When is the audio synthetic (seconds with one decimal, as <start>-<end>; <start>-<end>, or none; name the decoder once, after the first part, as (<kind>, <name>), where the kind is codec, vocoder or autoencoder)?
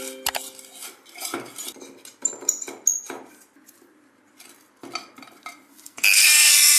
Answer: 5.7-6.8 (codec, SNAC)